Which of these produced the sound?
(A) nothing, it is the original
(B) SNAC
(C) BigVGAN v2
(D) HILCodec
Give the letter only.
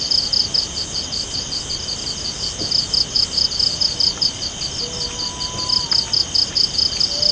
A